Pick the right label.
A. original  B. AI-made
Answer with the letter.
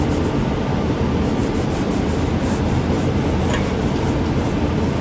A